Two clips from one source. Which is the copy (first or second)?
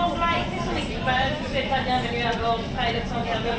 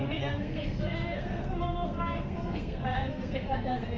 second